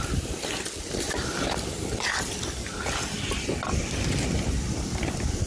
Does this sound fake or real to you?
real